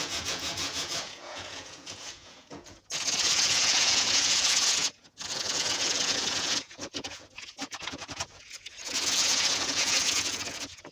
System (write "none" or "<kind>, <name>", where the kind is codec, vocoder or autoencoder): vocoder, Vocos